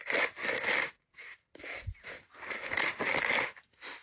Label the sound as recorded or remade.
recorded